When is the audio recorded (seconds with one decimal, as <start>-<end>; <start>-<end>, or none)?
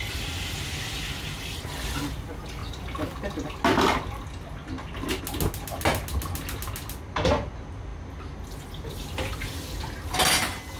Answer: 0.0-10.8